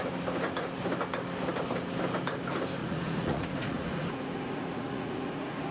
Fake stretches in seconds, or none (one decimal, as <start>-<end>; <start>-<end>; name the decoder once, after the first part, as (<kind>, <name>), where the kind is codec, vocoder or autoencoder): 2.8-5.7 (vocoder, Vocos)